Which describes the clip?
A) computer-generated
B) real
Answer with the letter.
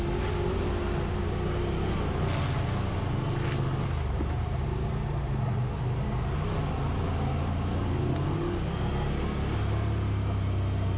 B